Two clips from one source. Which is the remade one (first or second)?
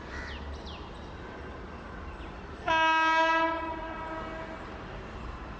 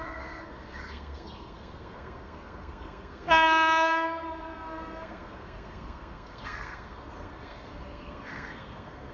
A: second